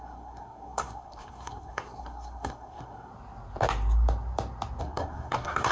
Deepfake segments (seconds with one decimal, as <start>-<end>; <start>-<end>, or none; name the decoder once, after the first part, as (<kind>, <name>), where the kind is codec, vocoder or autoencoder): 0.0-3.1 (codec, SNAC); 4.8-5.7